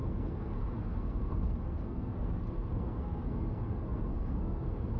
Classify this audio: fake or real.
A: fake